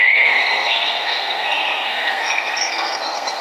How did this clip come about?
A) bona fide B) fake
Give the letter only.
B